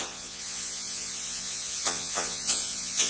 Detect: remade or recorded remade